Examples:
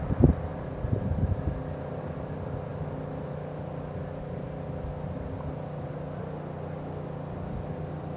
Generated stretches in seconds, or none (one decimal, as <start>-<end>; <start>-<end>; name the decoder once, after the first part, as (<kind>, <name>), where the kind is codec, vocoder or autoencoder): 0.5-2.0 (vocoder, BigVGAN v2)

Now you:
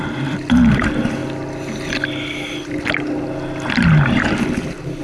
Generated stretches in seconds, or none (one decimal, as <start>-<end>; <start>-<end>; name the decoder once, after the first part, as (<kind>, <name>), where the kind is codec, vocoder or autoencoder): none

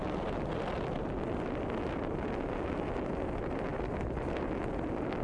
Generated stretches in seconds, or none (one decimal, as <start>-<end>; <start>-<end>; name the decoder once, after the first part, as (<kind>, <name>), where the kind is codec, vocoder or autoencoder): none

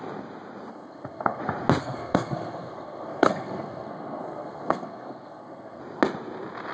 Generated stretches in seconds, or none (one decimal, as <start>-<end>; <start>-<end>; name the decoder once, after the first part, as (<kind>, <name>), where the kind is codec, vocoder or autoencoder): 0.7-1.4 (codec, SNAC); 1.8-5.8